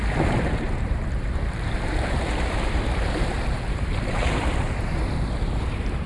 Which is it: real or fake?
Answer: fake